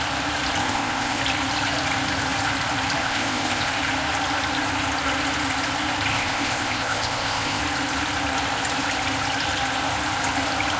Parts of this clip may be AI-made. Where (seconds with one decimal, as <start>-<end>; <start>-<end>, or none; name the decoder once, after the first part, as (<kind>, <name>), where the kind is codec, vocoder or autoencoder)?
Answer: 0.6-1.2 (codec, ZipCodec); 3.0-3.7; 6.1-7.6